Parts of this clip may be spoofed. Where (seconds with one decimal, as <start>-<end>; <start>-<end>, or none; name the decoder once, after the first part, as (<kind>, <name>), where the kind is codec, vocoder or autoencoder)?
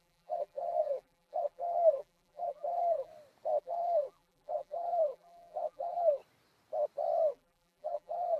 0.0-3.1 (vocoder, BigVGAN v2); 3.6-6.2; 7.3-8.4